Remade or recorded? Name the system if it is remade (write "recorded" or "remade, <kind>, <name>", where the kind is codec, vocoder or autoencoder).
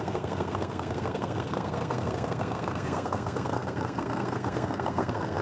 remade, codec, SNAC